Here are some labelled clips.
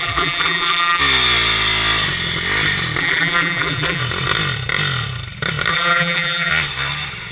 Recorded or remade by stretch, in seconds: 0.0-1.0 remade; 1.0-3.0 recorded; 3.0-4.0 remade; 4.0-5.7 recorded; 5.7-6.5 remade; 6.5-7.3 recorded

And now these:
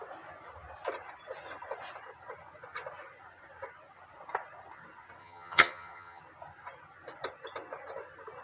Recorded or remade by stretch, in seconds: 0.0-5.2 recorded; 5.2-6.2 remade; 6.2-8.4 recorded

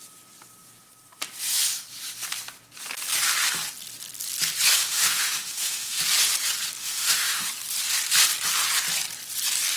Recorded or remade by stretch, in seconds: 0.0-4.8 recorded; 4.8-6.0 remade; 6.0-6.8 recorded; 6.8-7.5 remade; 7.5-9.8 recorded

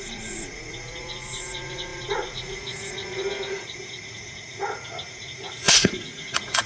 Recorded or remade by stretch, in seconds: 0.0-6.7 remade

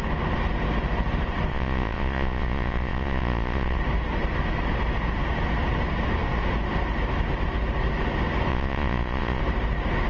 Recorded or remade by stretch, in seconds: 0.0-1.5 recorded; 1.5-3.8 remade; 3.8-8.5 recorded; 8.5-9.4 remade; 9.4-10.1 recorded

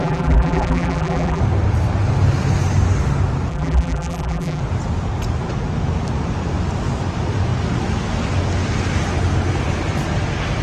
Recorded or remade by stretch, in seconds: 0.0-1.4 remade; 1.4-3.5 recorded; 3.5-4.6 remade; 4.6-10.6 recorded

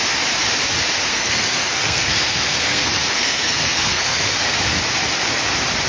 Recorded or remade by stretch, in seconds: 0.0-1.1 recorded; 1.1-4.6 remade; 4.6-5.9 recorded

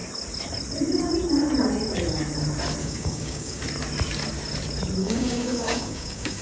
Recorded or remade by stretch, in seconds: 0.0-2.8 recorded; 2.8-3.6 remade; 3.6-5.0 recorded; 5.0-6.4 remade